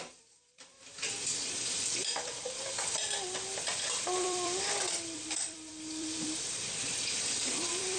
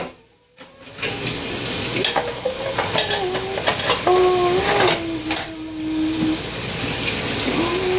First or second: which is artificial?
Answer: first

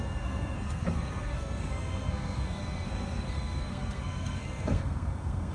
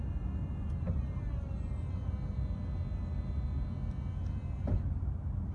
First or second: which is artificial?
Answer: first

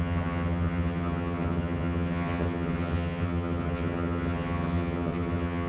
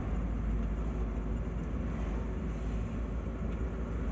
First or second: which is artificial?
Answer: first